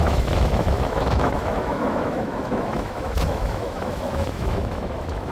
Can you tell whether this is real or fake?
fake